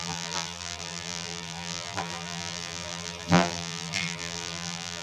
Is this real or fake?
fake